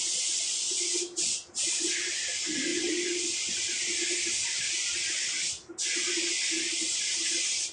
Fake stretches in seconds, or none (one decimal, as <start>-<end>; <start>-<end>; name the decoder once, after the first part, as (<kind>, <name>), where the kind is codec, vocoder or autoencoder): none